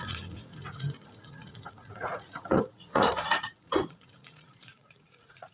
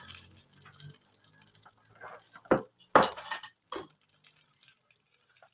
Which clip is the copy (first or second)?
first